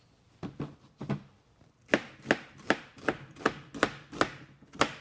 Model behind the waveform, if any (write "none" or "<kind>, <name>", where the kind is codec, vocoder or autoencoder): none